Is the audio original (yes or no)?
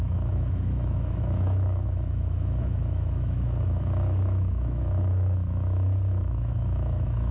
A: no